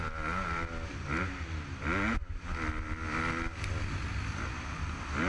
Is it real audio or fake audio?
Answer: real